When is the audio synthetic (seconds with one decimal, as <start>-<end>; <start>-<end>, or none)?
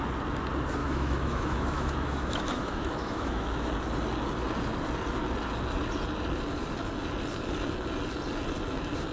0.8-3.7